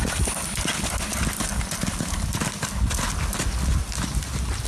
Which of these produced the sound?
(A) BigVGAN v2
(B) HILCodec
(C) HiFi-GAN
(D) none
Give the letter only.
D